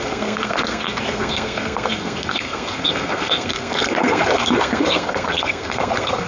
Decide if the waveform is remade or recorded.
remade